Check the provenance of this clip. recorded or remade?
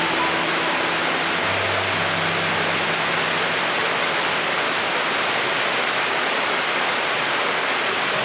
recorded